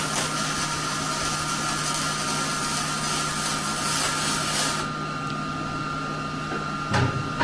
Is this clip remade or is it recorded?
recorded